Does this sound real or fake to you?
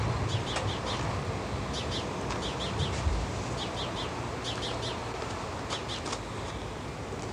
real